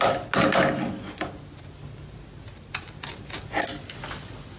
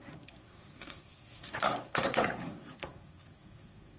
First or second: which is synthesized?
second